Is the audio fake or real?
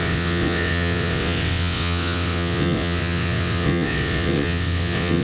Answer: fake